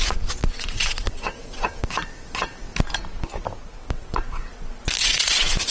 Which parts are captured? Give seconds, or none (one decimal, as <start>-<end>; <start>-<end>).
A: 2.7-3.6; 4.5-5.0